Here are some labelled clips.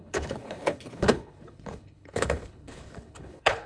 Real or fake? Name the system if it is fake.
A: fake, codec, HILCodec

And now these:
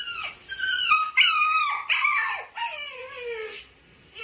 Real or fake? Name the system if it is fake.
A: real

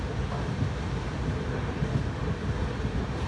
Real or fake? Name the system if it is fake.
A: real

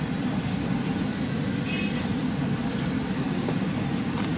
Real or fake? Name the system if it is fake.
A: real